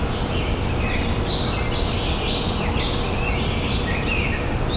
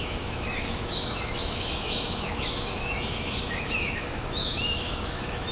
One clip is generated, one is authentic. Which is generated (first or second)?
second